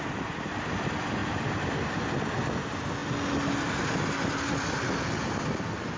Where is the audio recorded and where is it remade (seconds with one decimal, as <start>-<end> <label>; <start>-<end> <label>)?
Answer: 0.0-1.2 recorded; 1.2-1.7 remade; 1.7-6.0 recorded